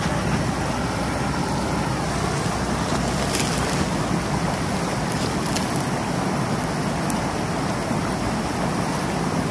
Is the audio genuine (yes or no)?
yes